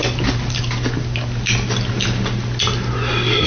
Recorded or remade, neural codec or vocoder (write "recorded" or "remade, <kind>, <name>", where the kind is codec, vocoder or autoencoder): recorded